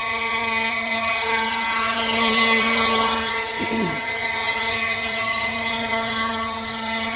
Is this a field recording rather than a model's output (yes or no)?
no